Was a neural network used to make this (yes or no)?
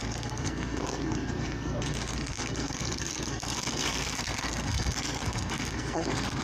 yes